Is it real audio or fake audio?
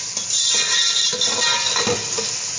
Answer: real